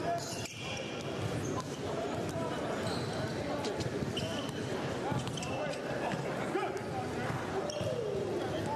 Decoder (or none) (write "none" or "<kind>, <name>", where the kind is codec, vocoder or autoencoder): none